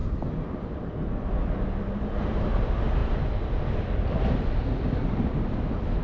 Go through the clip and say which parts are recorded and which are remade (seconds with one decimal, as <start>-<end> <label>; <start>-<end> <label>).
0.0-6.0 recorded